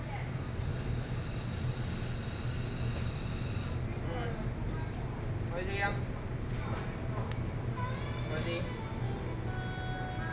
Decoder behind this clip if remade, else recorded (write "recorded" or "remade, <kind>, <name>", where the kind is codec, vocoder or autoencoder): recorded